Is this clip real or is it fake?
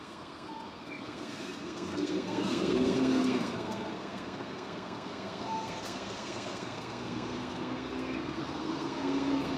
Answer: fake